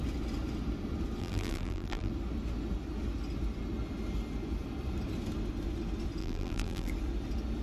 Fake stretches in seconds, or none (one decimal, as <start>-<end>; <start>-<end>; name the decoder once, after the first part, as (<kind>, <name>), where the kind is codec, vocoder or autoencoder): 1.2-2.1 (vocoder, BigVGAN v2); 6.2-6.9